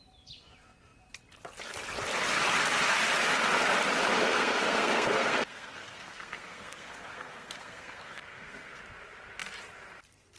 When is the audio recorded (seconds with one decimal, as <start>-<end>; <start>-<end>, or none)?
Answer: 0.0-4.3; 8.8-10.4